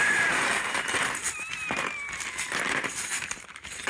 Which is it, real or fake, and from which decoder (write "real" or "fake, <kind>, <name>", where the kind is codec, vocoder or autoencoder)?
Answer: fake, vocoder, BigVGAN v2